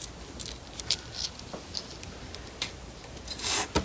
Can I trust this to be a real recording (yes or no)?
yes